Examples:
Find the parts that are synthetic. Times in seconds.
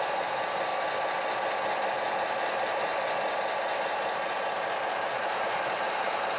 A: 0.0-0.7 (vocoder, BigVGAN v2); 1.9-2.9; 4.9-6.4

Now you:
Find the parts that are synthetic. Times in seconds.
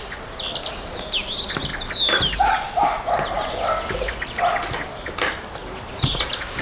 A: 5.6-6.6 (vocoder, BigVGAN v2)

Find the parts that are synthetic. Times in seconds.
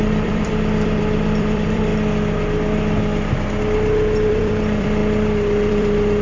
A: 0.0-1.9 (vocoder, BigVGAN v2); 3.6-5.0; 5.7-6.2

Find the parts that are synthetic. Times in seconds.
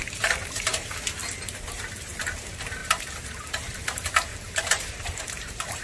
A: 1.2-2.2 (vocoder, BigVGAN v2); 2.8-3.8; 4.3-5.8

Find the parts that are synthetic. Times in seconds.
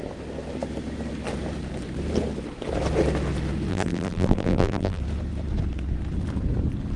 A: 3.7-5.0 (vocoder, BigVGAN v2)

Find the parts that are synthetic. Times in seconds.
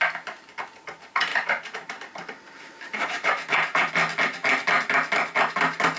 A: 1.3-3.9 (vocoder, BigVGAN v2)